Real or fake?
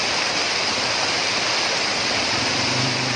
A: fake